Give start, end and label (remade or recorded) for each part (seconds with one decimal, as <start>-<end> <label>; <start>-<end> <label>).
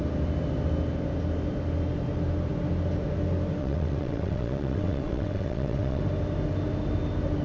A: 0.0-3.6 recorded; 3.6-6.0 remade; 6.0-7.4 recorded